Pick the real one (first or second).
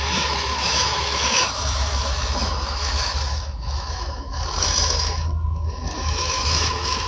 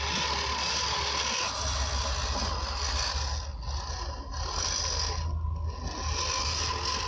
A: second